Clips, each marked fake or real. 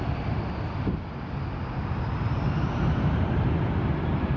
real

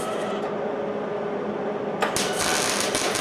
real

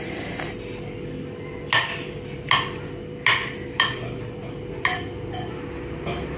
real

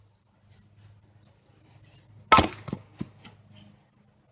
real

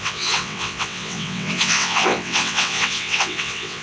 fake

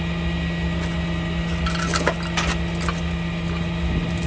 real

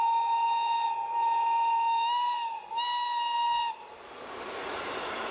real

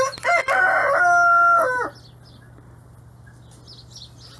real